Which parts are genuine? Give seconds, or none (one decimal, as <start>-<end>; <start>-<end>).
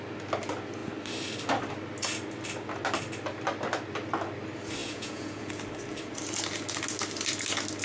0.0-4.8; 5.5-7.8